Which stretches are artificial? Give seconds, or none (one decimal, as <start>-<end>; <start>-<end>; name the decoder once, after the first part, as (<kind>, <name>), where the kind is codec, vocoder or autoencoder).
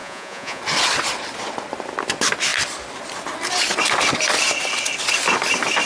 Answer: 0.0-0.6 (vocoder, Vocos)